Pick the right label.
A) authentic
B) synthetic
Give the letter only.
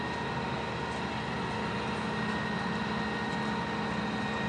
A